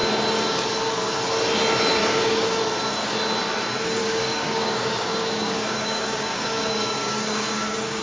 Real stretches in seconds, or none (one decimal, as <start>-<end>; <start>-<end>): 0.0-2.0; 2.6-4.0

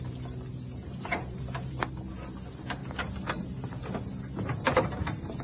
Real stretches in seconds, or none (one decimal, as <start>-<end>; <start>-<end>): 0.0-0.8; 1.8-2.8; 3.4-4.3

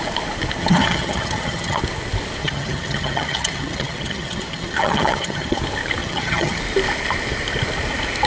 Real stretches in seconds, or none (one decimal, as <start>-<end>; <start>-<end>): 0.0-0.6; 1.8-2.4; 5.6-6.0; 6.6-8.3

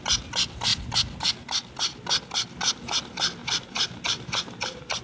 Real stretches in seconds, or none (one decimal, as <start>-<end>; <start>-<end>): 0.0-3.4

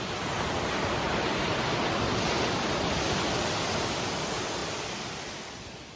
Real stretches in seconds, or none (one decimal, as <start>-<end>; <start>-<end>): 0.0-6.0

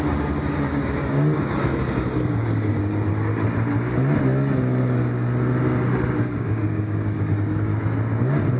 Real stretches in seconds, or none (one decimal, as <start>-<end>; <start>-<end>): 1.6-2.4; 3.1-6.4; 7.7-8.6